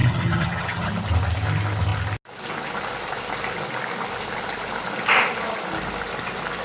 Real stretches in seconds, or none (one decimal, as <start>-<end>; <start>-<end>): 0.9-6.6